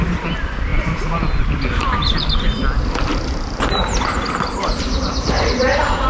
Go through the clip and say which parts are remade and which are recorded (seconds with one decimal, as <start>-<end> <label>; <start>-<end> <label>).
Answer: 0.0-6.1 remade